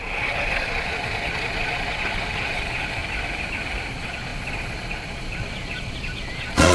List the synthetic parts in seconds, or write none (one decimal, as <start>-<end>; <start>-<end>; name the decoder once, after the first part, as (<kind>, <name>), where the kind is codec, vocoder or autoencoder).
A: 0.0-3.0 (vocoder, Vocos); 3.9-6.7

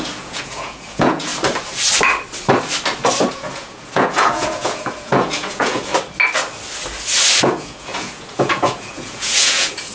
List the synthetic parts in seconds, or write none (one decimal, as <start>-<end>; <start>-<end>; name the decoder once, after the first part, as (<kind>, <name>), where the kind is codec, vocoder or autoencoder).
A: 0.0-1.3 (vocoder, Vocos); 3.3-5.9; 7.4-9.9

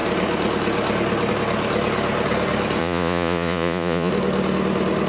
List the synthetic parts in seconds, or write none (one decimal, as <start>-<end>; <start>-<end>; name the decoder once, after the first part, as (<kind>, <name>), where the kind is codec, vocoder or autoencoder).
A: 2.8-4.1 (vocoder, Vocos)

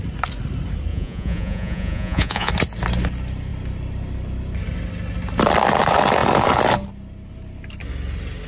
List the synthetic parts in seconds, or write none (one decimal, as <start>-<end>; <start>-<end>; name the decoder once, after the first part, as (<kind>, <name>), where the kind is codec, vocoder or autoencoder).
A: 0.9-2.5 (vocoder, Vocos)

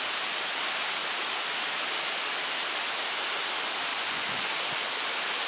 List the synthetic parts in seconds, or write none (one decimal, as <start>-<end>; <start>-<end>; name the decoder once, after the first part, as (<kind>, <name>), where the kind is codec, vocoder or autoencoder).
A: 3.9-4.5 (vocoder, Vocos)